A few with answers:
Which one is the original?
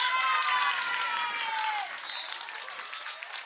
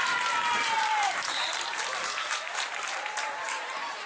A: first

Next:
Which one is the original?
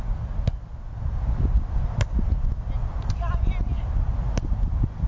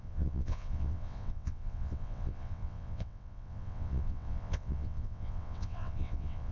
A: first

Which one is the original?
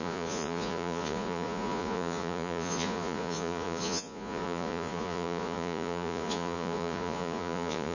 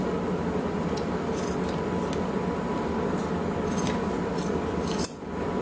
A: second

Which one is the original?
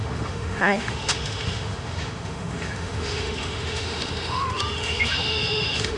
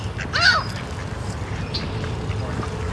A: second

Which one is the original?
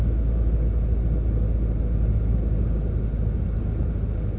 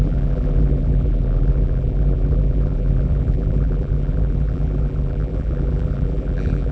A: first